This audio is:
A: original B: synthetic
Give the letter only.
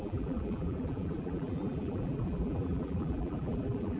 B